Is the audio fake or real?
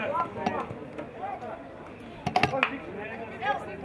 real